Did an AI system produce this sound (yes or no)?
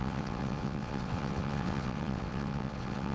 yes